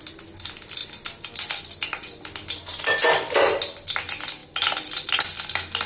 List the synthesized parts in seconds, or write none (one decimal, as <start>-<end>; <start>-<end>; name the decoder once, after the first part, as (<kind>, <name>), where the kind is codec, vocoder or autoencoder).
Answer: none